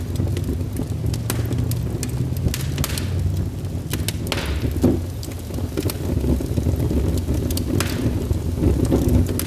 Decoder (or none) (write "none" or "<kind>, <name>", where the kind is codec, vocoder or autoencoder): none